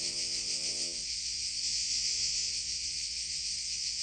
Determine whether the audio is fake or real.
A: fake